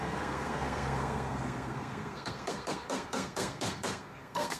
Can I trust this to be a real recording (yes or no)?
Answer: no